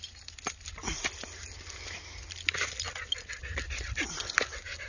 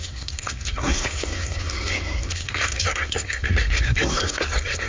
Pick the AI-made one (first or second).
second